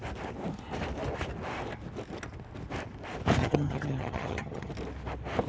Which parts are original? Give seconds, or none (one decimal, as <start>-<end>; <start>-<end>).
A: 0.0-3.4; 4.7-5.5